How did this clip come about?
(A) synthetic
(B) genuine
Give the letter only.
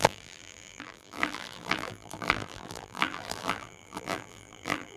A